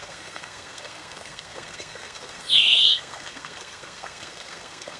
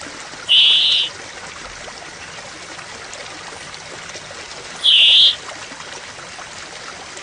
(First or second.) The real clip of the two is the second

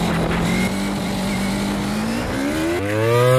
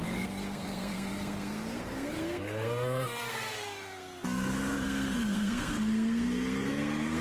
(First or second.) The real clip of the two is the first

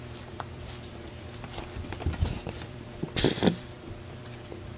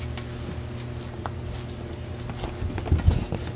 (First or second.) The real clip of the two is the second